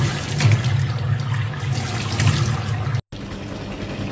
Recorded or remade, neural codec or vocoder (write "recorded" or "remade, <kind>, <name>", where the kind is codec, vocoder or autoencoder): recorded